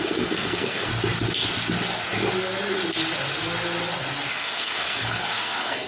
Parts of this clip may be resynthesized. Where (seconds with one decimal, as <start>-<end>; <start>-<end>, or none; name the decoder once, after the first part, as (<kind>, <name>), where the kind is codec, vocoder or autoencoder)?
0.0-0.9 (codec, SNAC); 4.3-5.9